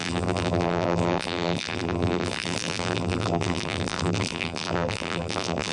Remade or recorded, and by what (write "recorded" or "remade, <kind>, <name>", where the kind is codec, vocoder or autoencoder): remade, vocoder, BigVGAN v2